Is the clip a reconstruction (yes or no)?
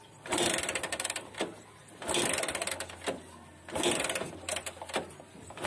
no